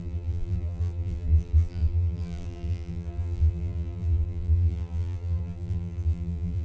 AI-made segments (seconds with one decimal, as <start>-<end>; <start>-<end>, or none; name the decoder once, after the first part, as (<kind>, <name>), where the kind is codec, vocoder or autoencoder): 0.0-6.6 (vocoder, BigVGAN v2)